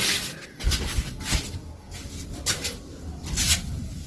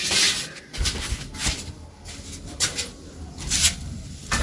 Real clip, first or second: second